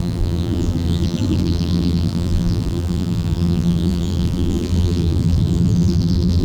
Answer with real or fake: fake